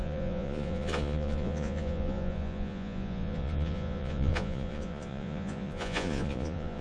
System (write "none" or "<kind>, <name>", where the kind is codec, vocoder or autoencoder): vocoder, Vocos